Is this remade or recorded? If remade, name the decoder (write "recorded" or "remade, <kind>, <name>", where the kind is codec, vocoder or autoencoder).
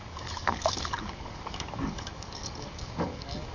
remade, codec, DAC